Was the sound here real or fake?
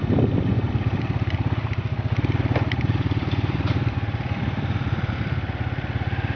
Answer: fake